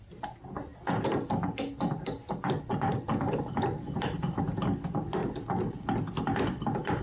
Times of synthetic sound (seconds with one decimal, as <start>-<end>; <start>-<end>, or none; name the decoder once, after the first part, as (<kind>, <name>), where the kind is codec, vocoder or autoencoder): 5.2-7.0 (vocoder, BigVGAN v2)